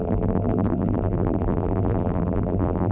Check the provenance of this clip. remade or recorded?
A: remade